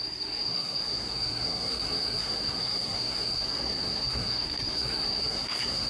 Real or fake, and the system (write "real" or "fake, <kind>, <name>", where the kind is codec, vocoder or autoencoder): fake, codec, SNAC